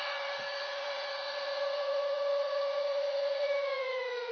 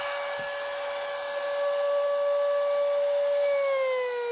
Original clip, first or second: second